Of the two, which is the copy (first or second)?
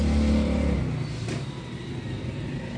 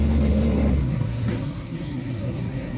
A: second